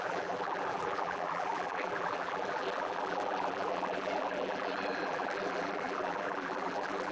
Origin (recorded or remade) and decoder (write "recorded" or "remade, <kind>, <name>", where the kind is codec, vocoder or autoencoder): remade, vocoder, BigVGAN v2